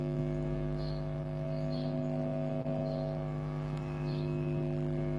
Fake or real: fake